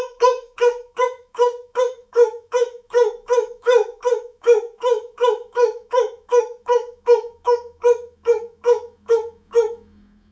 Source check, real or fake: fake